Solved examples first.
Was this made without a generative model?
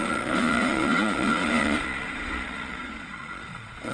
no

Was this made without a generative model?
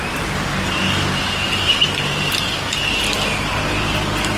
yes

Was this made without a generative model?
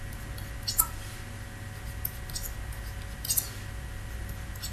yes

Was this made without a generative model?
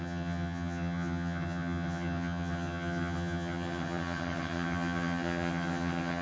no